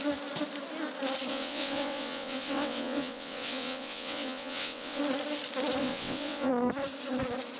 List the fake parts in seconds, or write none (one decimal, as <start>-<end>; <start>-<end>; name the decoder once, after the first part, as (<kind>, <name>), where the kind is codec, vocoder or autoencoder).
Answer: 1.3-5.0 (vocoder, WaveNeXt); 5.8-6.5

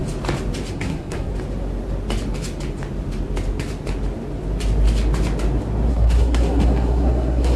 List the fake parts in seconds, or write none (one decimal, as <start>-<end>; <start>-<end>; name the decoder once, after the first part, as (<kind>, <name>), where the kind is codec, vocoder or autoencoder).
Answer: 0.7-1.3 (codec, SNAC); 5.9-7.6

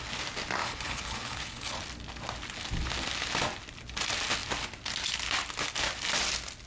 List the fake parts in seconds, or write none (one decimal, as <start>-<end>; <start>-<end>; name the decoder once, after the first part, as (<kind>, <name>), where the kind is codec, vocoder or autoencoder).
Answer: 0.6-1.8 (codec, HILCodec)